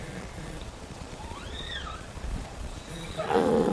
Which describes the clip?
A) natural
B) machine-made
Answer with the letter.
B